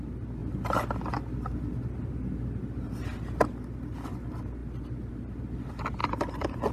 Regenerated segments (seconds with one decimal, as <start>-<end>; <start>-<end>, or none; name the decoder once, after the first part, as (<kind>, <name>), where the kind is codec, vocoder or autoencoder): 6.0-6.7 (vocoder, BigVGAN v2)